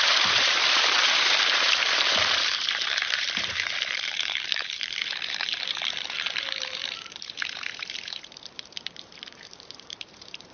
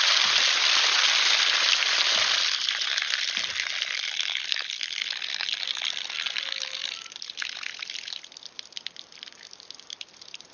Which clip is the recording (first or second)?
second